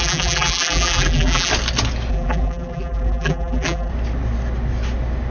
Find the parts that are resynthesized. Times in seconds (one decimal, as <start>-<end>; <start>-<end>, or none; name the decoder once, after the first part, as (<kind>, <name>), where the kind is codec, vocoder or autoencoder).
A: 0.0-1.5 (vocoder, BigVGAN v2); 2.1-3.9